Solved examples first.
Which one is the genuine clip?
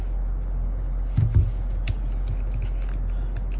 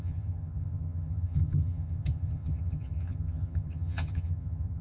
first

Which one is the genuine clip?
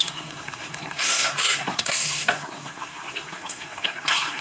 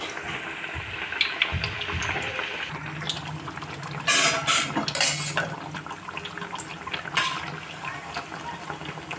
second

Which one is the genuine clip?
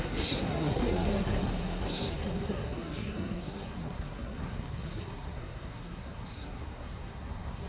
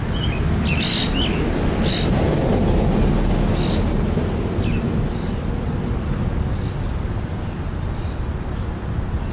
second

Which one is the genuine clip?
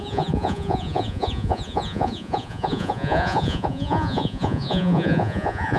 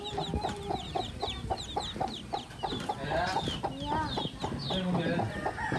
second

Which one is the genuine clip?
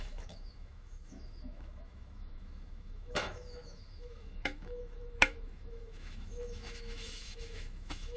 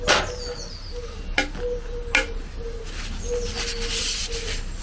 second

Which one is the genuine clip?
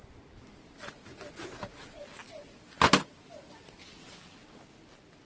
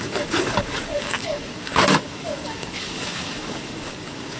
first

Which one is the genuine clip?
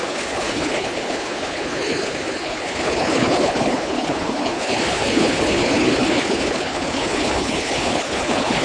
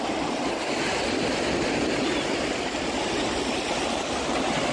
second